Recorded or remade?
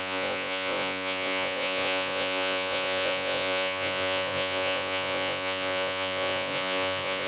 remade